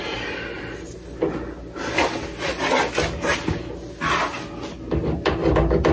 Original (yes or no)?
yes